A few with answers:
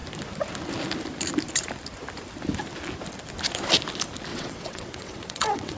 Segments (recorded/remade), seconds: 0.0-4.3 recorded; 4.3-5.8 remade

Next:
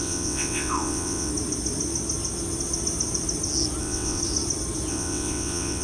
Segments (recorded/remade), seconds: 0.0-1.3 remade; 1.3-3.8 recorded; 3.8-4.2 remade; 4.2-4.9 recorded; 4.9-5.8 remade

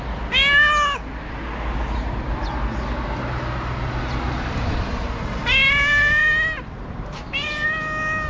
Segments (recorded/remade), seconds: 0.0-8.3 recorded